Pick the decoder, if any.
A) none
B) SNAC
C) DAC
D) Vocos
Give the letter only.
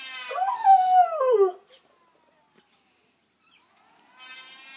A